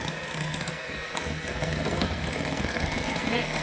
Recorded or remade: remade